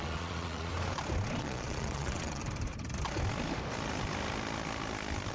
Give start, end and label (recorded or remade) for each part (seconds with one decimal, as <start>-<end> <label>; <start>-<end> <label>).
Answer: 0.0-0.7 remade; 0.7-1.4 recorded; 1.4-2.4 remade; 2.4-5.3 recorded